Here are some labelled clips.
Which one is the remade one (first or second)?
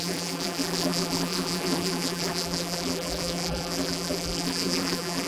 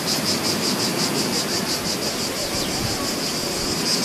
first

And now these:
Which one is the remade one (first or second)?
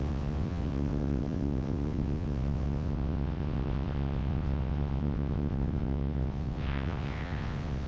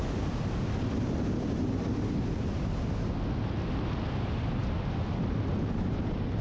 first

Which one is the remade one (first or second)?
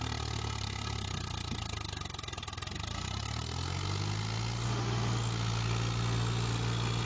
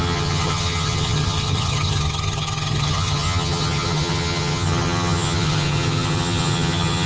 second